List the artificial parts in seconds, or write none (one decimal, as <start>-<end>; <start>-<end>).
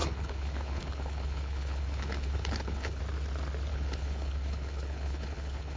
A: 0.0-3.0; 3.7-5.8